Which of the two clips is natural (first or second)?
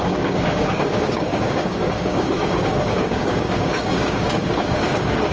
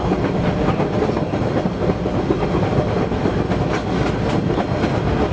second